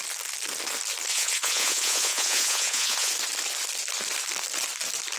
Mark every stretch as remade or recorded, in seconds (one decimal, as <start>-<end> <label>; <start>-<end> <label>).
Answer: 0.0-1.1 recorded; 1.1-3.1 remade; 3.1-5.2 recorded

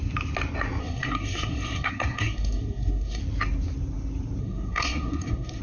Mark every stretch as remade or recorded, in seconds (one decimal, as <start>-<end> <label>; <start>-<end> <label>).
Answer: 0.0-0.8 recorded; 0.8-3.2 remade; 3.2-4.4 recorded; 4.4-5.6 remade

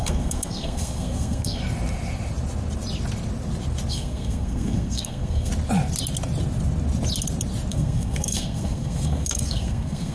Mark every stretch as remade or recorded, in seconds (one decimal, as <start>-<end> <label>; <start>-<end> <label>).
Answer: 0.0-1.6 remade; 1.6-3.9 recorded; 3.9-5.5 remade; 5.5-7.7 recorded; 7.7-10.1 remade